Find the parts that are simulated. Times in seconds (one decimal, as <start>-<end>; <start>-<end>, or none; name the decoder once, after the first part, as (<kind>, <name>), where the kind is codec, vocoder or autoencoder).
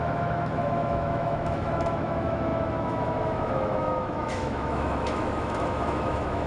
0.0-6.5 (autoencoder, DAC-VAE)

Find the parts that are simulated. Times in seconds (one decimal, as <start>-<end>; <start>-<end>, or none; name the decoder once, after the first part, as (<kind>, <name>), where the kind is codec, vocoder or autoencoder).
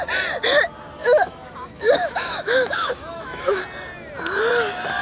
1.0-3.6 (autoencoder, DAC-VAE)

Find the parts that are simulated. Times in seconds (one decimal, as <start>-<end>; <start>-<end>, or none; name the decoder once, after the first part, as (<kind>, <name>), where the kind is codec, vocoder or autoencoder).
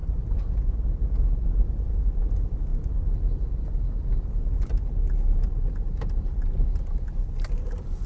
none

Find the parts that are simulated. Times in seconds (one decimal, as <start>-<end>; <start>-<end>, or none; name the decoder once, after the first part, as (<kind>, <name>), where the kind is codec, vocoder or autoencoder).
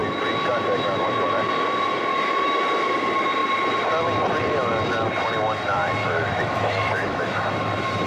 2.1-2.6 (autoencoder, DAC-VAE); 6.0-7.5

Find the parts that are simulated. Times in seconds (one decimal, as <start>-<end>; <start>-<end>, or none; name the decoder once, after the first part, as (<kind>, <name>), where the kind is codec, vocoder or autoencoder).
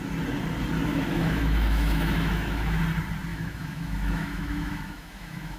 0.9-2.8 (autoencoder, DAC-VAE); 3.3-5.6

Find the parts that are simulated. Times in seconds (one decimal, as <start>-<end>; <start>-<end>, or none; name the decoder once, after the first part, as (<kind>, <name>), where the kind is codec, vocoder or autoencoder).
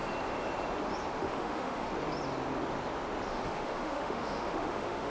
1.2-1.9 (autoencoder, DAC-VAE); 3.3-5.1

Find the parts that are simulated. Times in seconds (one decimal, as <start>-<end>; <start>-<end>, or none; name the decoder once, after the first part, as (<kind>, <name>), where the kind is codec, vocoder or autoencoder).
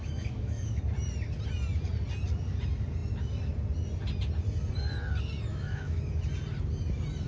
0.0-0.8 (autoencoder, DAC-VAE); 5.5-6.0